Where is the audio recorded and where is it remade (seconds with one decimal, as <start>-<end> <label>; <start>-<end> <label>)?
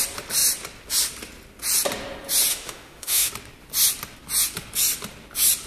0.0-2.5 recorded; 2.5-3.3 remade; 3.3-5.7 recorded